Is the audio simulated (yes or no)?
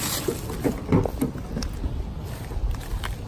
no